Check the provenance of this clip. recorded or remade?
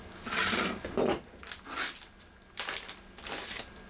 recorded